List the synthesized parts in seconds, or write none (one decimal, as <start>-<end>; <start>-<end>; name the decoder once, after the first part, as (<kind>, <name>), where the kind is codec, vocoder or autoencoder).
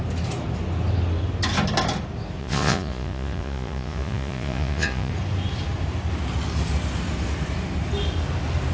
2.4-5.1 (vocoder, Vocos)